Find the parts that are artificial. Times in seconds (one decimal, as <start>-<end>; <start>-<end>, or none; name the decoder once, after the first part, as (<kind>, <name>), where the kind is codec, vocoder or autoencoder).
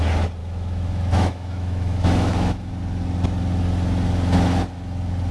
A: 0.4-2.7 (autoencoder, DAC-VAE)